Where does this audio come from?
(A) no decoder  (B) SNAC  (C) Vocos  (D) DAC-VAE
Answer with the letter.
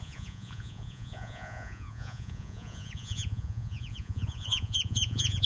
C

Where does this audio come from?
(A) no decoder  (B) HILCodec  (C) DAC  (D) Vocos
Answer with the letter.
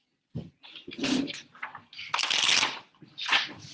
A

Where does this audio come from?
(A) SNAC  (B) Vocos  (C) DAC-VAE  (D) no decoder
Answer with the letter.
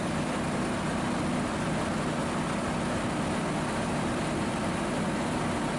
D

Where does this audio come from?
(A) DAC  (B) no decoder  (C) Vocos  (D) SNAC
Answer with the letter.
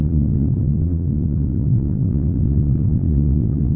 C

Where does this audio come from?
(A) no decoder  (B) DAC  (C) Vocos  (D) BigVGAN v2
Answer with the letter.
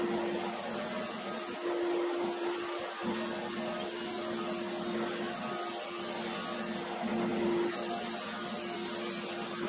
A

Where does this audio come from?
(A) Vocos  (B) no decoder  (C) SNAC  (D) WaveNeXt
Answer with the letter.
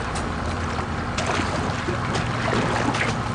B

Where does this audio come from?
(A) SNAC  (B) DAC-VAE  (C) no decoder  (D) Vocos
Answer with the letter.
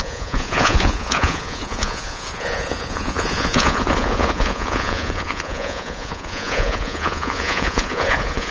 D